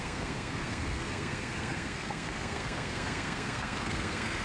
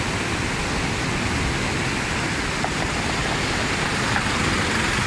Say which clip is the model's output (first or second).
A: first